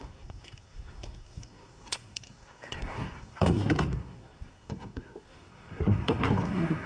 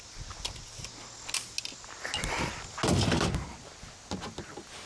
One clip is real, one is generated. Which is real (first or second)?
second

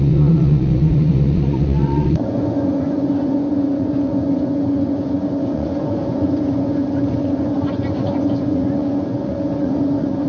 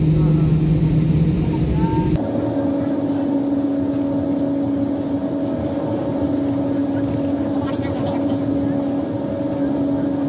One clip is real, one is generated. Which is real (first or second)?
second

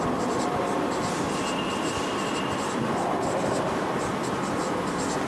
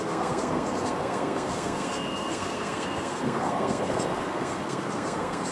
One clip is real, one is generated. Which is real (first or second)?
first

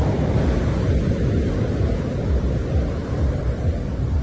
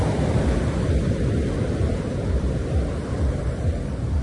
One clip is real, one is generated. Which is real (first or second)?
first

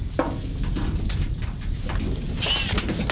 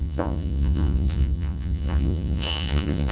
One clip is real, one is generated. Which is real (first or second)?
first